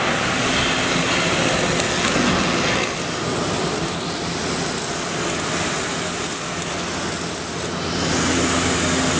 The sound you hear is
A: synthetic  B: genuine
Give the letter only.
B